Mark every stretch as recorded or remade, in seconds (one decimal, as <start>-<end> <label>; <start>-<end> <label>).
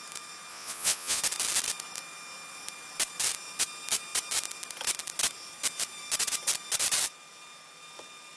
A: 0.0-0.5 recorded; 0.5-1.2 remade; 1.2-8.4 recorded